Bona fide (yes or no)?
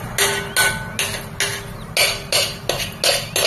yes